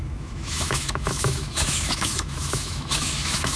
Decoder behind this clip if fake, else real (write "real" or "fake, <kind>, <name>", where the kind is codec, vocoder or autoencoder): fake, autoencoder, DAC-VAE